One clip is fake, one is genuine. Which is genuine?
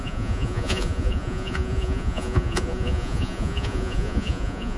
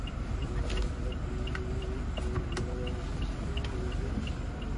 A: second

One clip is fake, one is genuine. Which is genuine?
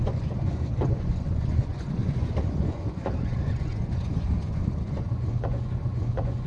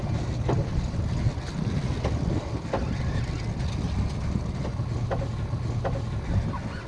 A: second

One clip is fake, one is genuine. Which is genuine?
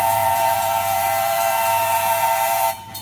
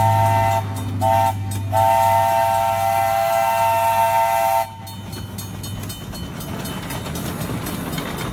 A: second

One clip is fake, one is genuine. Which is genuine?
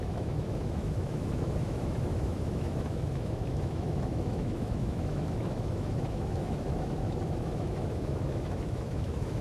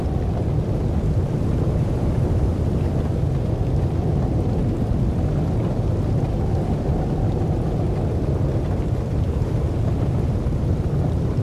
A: second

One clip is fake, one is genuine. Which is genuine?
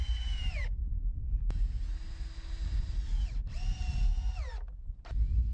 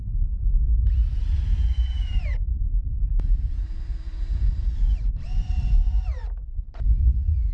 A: first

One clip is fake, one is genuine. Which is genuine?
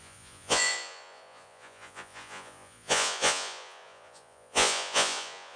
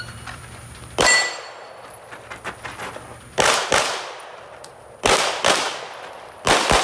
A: second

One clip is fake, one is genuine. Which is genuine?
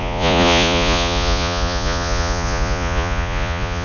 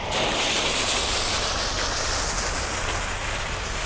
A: second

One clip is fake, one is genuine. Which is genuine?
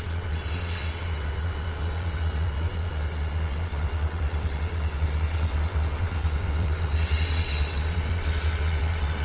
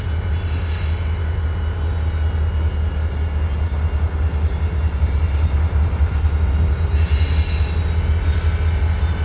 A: second